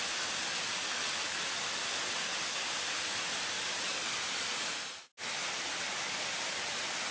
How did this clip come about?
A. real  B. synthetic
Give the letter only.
A